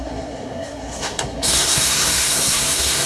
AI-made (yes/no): yes